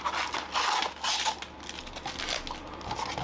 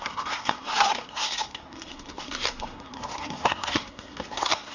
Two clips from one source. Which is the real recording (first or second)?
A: first